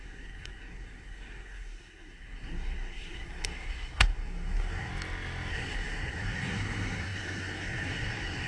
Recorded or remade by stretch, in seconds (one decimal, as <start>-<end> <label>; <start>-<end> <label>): 0.0-4.9 remade; 4.9-5.5 recorded; 5.5-8.5 remade